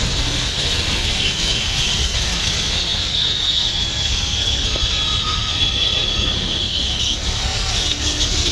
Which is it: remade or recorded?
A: remade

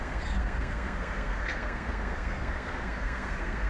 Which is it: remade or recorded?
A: remade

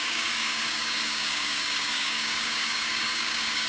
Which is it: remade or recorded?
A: remade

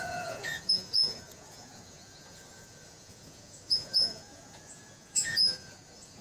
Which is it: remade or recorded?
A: remade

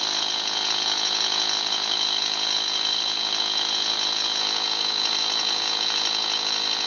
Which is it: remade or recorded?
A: remade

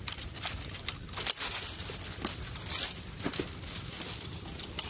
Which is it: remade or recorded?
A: recorded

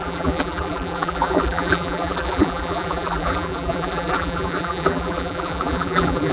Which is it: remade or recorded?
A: remade